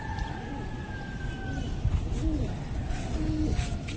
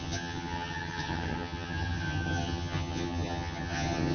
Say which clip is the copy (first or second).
second